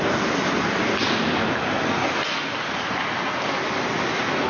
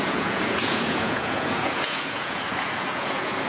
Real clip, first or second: first